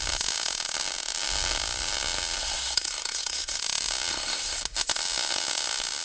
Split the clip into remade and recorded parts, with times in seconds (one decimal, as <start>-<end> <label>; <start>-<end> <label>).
0.0-2.4 recorded; 2.4-3.6 remade; 3.6-4.1 recorded; 4.1-4.6 remade; 4.6-6.0 recorded